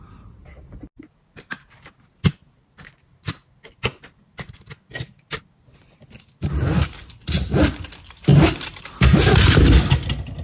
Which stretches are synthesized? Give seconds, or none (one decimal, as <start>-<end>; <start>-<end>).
none